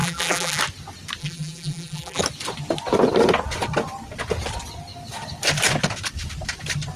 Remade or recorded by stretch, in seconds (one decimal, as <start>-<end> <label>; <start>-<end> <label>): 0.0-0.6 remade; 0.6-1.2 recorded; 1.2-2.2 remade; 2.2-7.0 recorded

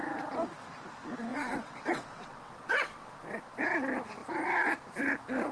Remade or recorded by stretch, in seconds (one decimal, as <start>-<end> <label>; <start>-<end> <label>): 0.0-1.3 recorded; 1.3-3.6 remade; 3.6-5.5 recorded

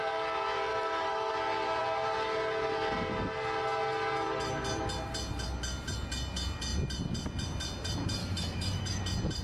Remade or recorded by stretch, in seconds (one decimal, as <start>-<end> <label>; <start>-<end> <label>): 0.0-0.7 recorded; 0.7-1.3 remade; 1.3-8.2 recorded; 8.2-9.0 remade; 9.0-9.4 recorded

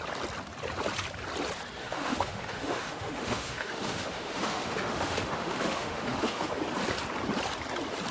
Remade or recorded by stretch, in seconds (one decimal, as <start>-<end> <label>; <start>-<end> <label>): 0.0-1.8 recorded; 1.8-6.6 remade; 6.6-8.1 recorded

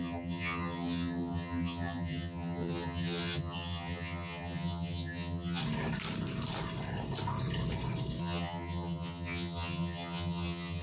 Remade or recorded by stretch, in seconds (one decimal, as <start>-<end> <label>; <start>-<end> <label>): 0.0-5.6 remade; 5.6-8.2 recorded; 8.2-10.8 remade

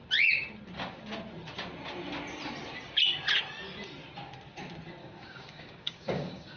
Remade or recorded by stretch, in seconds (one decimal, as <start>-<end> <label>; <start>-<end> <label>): 0.0-5.0 recorded; 5.0-6.6 remade

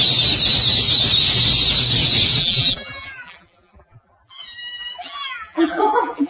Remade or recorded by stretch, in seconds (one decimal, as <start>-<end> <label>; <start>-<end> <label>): 0.0-2.4 recorded; 2.4-6.3 remade